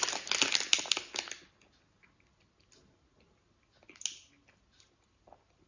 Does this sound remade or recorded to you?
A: recorded